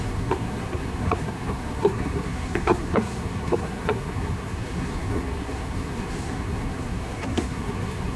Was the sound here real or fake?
fake